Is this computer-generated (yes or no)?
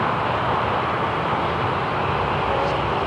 no